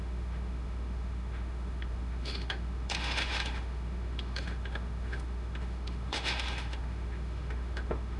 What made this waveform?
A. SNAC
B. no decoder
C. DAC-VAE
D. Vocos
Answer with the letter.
C